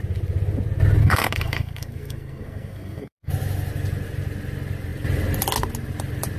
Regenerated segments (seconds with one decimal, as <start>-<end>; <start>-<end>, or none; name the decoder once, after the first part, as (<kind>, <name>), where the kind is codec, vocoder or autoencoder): 1.0-3.3 (codec, SNAC)